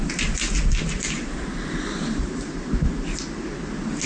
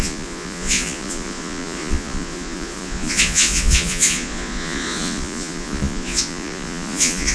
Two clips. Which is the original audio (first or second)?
first